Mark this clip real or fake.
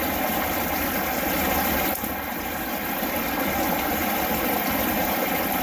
real